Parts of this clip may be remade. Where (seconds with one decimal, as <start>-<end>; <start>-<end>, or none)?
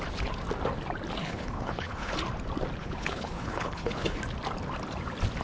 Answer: 1.2-2.1; 2.8-4.2